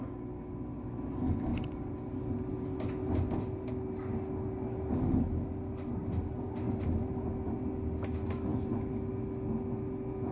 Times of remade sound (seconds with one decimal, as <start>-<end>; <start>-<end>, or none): none

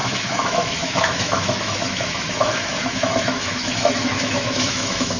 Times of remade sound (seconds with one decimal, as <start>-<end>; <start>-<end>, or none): 0.0-5.2

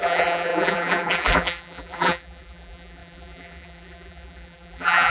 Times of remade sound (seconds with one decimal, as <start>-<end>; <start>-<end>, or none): 0.0-5.1

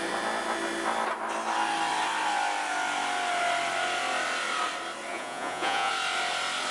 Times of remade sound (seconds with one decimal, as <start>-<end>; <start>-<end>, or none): 5.1-5.9